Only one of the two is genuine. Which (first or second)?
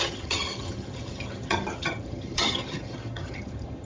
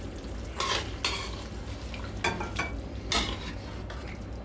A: second